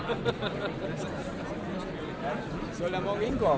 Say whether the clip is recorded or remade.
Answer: recorded